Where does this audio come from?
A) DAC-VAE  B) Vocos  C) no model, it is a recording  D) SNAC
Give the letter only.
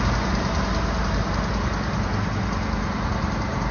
C